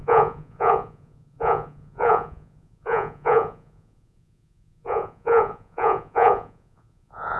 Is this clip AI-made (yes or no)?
yes